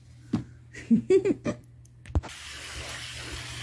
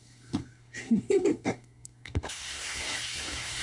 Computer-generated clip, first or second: second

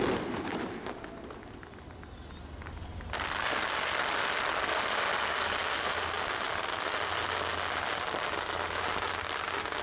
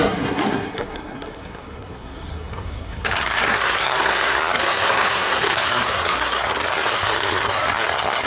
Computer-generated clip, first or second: second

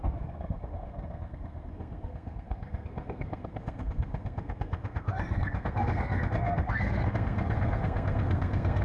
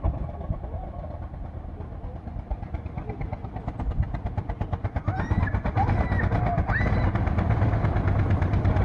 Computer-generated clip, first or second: first